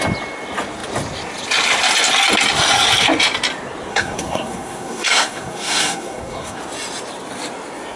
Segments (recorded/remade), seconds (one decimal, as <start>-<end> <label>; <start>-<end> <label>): 0.0-3.9 recorded; 3.9-6.6 remade; 6.6-8.0 recorded